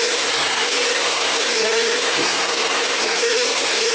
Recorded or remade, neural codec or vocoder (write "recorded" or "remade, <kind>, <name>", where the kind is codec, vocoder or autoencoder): remade, codec, SNAC